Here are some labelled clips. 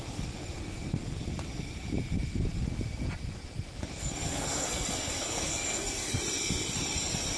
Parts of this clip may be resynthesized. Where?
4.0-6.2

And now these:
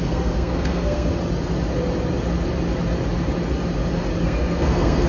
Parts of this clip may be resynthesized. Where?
0.0-1.1; 4.2-5.1

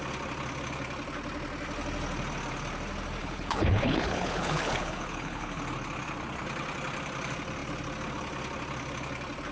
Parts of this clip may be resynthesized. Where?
3.2-5.6

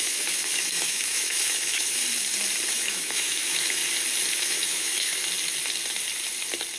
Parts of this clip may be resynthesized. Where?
0.0-2.0; 2.7-3.8; 4.3-5.2

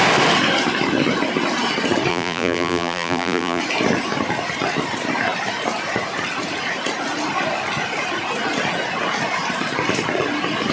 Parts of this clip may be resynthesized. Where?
2.1-3.6